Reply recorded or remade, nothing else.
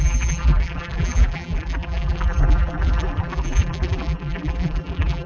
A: remade